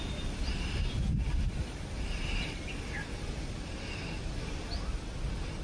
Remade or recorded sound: recorded